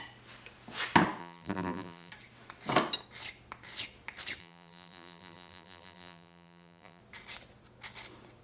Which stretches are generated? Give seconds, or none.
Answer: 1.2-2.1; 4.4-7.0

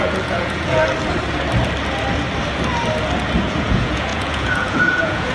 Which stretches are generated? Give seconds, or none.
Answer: 0.0-0.8; 3.4-5.3

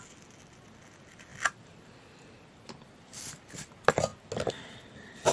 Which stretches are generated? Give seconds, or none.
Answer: none

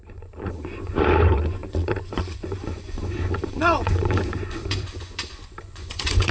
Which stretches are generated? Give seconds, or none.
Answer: 0.0-6.3